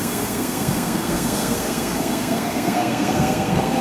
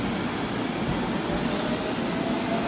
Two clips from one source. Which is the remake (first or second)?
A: first